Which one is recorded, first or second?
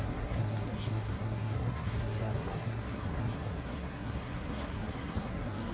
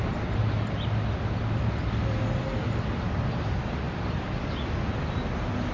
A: second